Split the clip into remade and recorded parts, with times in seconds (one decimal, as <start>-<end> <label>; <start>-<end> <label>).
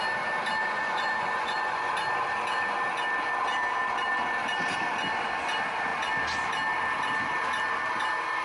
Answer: 0.0-0.6 recorded; 0.6-1.9 remade; 1.9-8.4 recorded